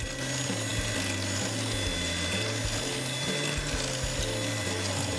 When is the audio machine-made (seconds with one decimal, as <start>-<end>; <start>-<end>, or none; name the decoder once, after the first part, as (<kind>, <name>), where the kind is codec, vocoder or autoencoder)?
none